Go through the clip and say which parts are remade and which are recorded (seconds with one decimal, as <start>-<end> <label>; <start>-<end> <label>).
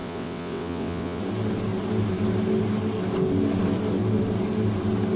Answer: 0.0-1.2 remade; 1.2-5.2 recorded